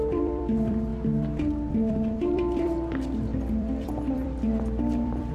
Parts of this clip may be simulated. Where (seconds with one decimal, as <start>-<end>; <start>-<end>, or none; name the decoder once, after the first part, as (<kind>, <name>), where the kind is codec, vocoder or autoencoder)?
0.0-0.9 (vocoder, BigVGAN v2); 1.9-5.3